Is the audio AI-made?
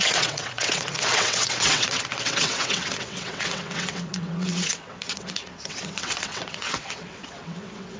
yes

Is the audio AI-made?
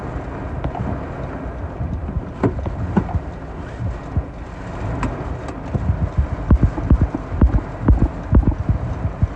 no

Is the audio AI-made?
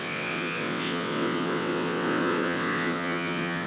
yes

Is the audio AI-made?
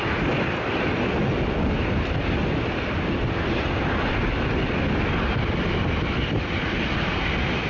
no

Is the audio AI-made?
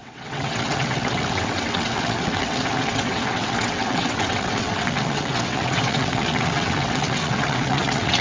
yes